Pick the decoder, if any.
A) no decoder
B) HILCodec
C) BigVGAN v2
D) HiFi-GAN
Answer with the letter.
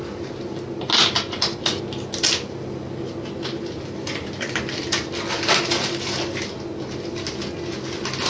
A